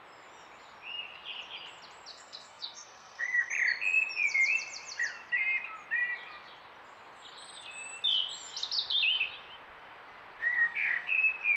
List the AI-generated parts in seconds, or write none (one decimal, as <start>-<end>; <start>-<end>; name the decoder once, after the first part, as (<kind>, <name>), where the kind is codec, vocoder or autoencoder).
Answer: 2.1-3.5 (codec, SNAC); 10.4-11.1